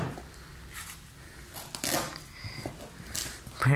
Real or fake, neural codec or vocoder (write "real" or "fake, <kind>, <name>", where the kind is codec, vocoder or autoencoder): real